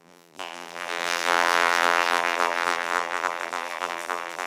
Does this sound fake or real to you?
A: fake